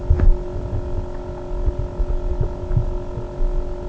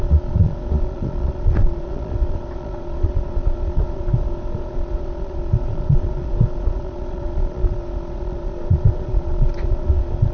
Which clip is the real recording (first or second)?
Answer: first